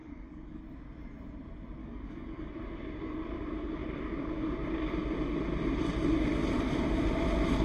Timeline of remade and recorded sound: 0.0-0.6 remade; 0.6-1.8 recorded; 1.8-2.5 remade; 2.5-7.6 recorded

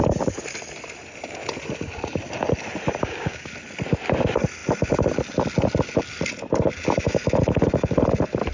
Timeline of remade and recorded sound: 0.0-3.0 recorded; 3.0-3.5 remade; 3.5-8.5 recorded

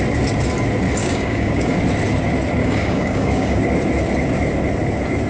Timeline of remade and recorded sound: 0.0-1.0 recorded; 1.0-1.8 remade; 1.8-2.6 recorded; 2.6-3.6 remade; 3.6-5.3 recorded

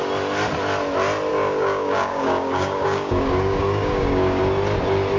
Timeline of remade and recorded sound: 0.0-1.3 recorded; 1.3-4.4 remade; 4.4-5.2 recorded

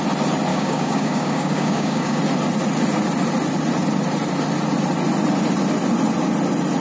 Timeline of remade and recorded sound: 0.0-0.5 recorded; 0.5-2.2 remade; 2.2-6.8 recorded